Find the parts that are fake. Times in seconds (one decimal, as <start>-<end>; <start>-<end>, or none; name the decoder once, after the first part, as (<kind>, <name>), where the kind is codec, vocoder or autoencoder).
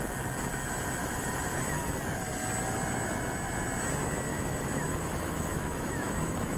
1.0-1.8 (autoencoder, DAC-VAE); 4.3-6.6